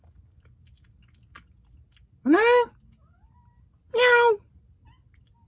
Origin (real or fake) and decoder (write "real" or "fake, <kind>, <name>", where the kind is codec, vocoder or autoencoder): real